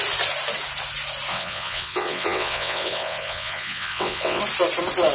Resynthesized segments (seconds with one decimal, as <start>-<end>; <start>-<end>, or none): 1.3-4.4